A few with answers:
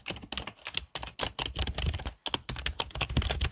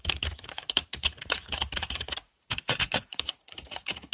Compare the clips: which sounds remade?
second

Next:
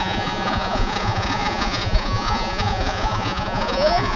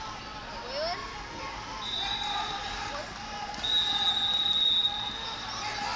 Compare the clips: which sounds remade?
first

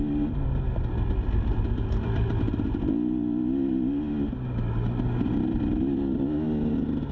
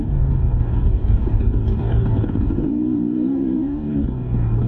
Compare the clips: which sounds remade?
second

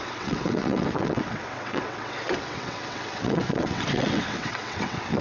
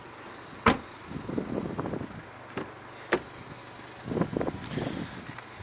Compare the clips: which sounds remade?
first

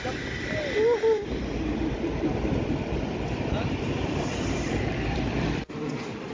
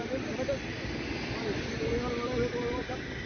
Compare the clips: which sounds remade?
first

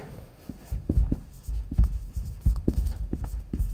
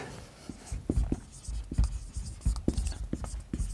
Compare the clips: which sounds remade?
first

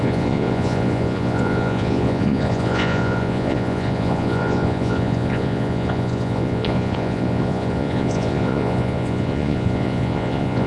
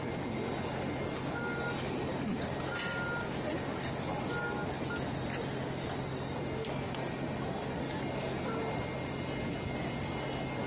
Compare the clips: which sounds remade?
first